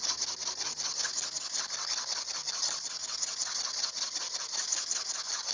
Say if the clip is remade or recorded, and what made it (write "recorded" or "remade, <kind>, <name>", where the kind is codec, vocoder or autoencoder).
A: recorded